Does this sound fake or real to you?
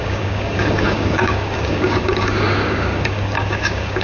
fake